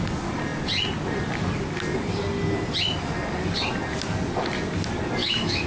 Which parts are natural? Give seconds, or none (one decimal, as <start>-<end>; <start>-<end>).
0.0-5.2